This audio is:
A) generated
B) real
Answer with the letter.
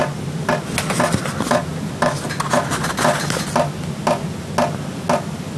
B